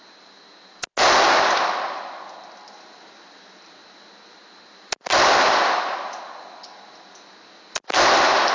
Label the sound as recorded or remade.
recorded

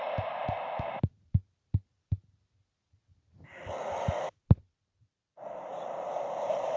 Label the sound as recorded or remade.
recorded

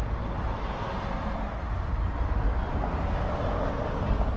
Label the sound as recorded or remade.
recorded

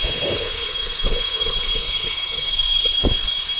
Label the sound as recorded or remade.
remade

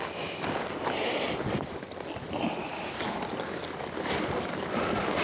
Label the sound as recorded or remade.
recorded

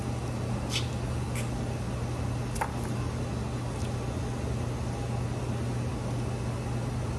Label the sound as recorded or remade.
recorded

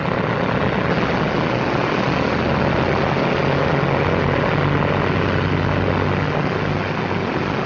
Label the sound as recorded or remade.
recorded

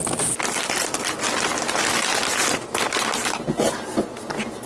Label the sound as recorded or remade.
recorded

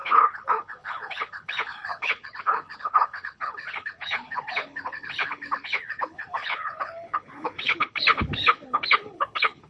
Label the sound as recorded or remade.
remade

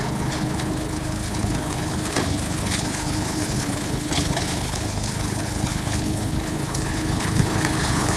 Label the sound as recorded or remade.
remade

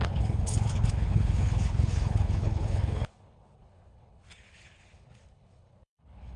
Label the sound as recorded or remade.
remade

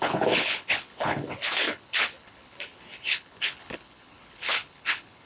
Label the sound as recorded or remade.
remade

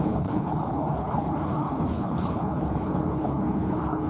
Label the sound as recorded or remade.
remade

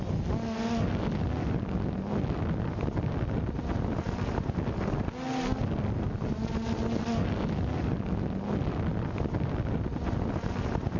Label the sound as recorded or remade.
recorded